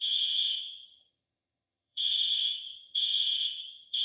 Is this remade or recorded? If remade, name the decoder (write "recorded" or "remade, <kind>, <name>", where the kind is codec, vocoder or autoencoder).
remade, vocoder, HiFi-GAN